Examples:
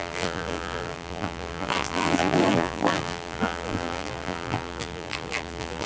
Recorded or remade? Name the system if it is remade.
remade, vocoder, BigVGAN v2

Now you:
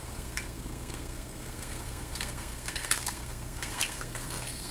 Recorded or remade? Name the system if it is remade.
remade, codec, SNAC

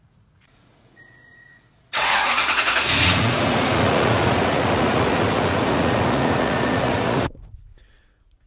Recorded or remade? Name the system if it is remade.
remade, vocoder, Vocos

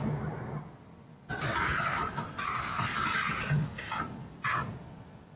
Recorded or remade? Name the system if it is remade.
recorded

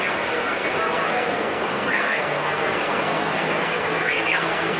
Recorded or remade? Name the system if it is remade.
remade, codec, SNAC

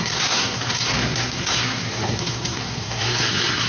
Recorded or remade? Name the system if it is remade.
remade, codec, SNAC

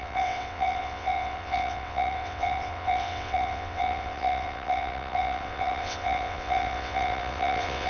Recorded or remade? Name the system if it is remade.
remade, vocoder, WaveNeXt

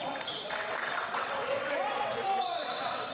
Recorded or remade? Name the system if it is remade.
remade, vocoder, WaveNeXt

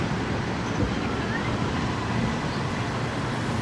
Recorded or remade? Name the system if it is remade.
recorded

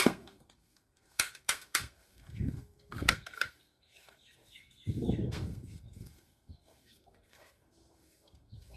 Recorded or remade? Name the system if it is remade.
remade, codec, SNAC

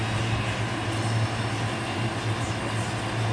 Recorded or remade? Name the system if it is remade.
recorded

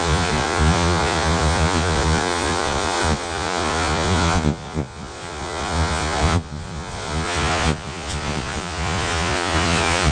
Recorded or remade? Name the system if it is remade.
remade, vocoder, Vocos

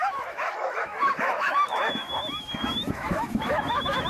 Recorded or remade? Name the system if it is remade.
remade, autoencoder, DAC-VAE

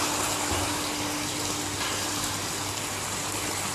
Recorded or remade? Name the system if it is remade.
recorded